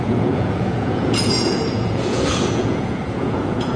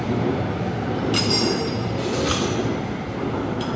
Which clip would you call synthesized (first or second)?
first